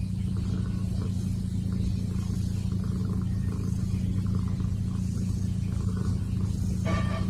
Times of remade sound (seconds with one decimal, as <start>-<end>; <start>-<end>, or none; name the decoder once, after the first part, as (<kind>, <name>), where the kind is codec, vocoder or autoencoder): none